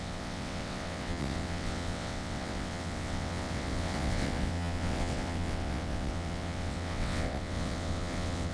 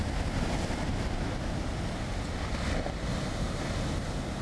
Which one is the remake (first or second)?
first